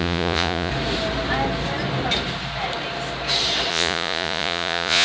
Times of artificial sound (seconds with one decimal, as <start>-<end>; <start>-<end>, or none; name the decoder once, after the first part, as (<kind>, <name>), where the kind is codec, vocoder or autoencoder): 0.0-0.7 (vocoder, Vocos); 3.7-5.0